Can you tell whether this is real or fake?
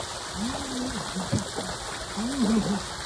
real